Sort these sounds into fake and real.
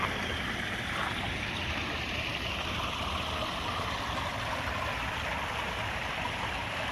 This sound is real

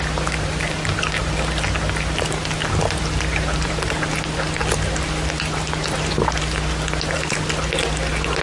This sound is real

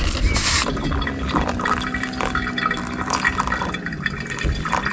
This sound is real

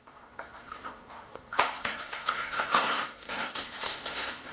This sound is fake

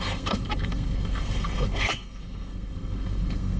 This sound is fake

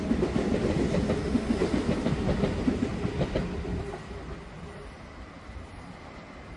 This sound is real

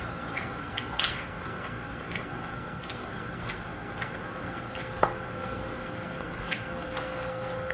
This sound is fake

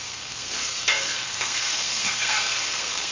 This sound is fake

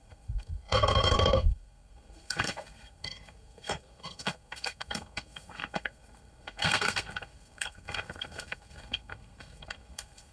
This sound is fake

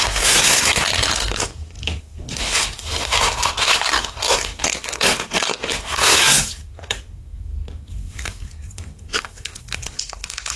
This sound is fake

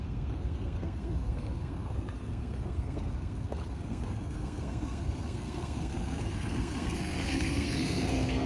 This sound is fake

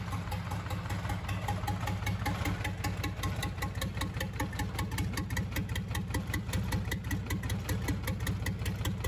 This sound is real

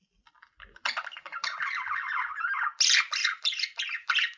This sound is real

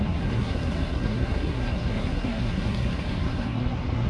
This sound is fake